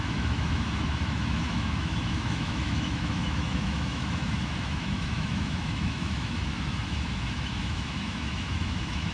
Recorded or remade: remade